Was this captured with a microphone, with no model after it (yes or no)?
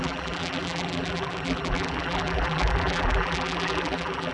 no